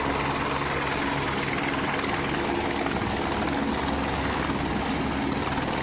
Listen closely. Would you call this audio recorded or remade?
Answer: recorded